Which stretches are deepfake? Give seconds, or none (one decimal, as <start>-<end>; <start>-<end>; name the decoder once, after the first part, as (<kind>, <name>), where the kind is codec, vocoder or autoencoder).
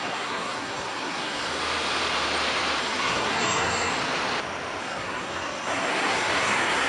0.0-1.6 (codec, SNAC); 2.8-3.9; 4.8-6.9